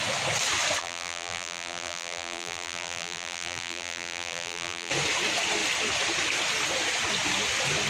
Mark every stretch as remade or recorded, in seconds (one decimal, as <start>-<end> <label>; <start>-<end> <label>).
0.0-0.8 recorded; 0.8-4.9 remade; 4.9-7.9 recorded